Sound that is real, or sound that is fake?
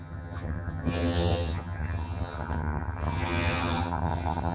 fake